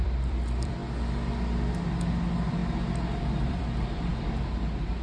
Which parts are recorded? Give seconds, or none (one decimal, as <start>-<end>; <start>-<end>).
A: 0.8-2.2; 2.6-3.2; 4.1-5.0